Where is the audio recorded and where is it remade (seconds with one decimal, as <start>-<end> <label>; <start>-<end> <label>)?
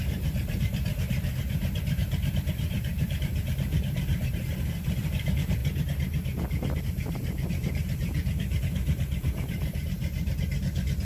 0.0-5.6 remade; 5.6-6.8 recorded; 6.8-10.0 remade; 10.0-11.0 recorded